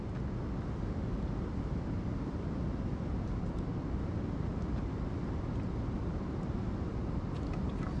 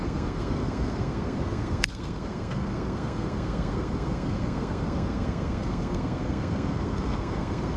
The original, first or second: first